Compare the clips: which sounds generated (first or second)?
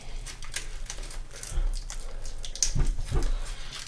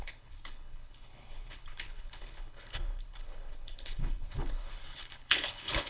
second